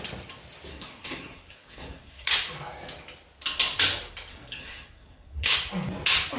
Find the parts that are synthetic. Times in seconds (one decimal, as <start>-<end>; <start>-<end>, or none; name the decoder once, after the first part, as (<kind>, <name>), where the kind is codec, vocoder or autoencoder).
0.7-2.3 (codec, SNAC); 4.3-5.5